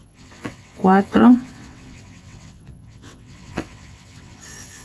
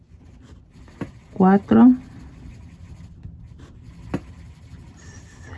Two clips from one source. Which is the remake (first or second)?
first